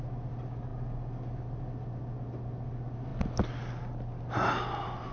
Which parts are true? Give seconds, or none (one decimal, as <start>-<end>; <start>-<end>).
0.0-5.1